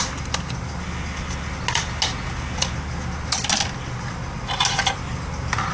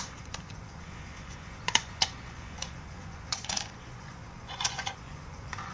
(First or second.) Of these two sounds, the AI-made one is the second